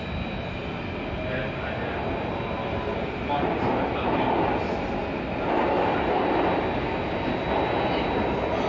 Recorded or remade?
recorded